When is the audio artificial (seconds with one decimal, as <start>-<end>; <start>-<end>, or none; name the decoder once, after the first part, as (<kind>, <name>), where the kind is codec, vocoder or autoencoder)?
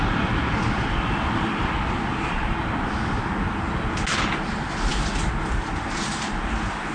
none